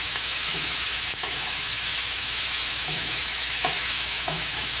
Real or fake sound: fake